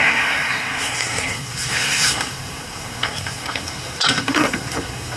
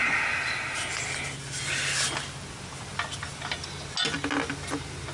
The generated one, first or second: first